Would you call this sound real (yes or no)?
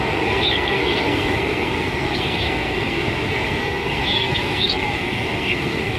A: no